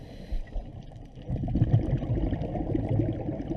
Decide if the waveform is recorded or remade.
recorded